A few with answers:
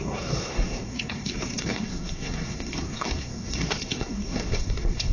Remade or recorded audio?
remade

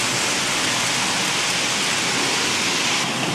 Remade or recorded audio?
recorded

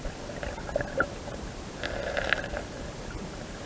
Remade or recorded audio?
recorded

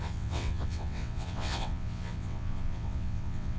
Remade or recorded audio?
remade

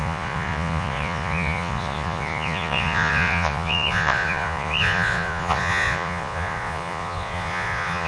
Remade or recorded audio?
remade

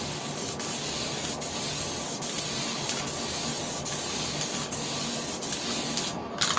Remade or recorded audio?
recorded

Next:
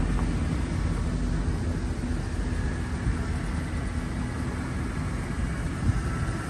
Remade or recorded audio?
recorded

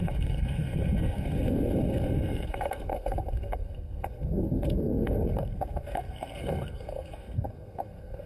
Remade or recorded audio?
remade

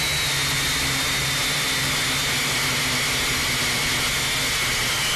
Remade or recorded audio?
recorded